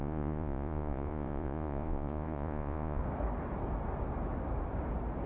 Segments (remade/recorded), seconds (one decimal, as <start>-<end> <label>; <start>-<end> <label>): 0.0-3.0 remade; 3.0-5.3 recorded